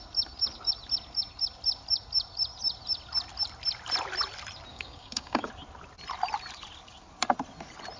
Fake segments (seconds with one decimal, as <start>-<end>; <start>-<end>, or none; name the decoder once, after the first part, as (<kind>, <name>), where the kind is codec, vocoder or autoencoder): 4.7-5.5 (codec, DAC)